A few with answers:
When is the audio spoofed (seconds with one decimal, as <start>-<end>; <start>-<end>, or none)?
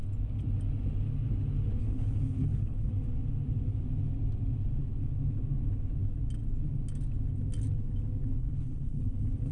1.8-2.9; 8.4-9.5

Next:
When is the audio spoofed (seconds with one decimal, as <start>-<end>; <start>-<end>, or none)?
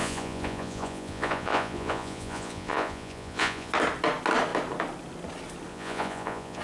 0.0-3.7; 5.7-6.6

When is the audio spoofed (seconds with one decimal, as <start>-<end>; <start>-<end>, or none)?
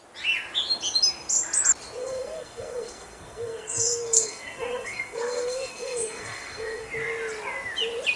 2.0-6.9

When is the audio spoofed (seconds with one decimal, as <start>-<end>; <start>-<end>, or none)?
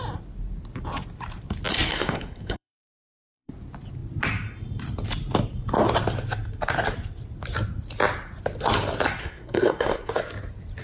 1.9-3.5; 9.2-10.1